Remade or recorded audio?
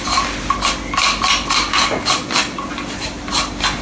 recorded